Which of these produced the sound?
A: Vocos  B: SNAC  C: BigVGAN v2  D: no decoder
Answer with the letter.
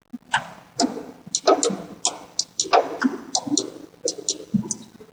D